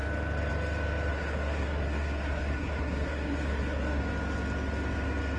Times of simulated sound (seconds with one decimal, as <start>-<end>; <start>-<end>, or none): 1.1-4.0